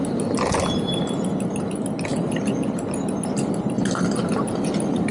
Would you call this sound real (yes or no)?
yes